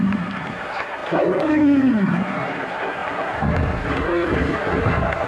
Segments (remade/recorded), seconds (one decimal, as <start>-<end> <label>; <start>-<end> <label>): 0.0-5.3 remade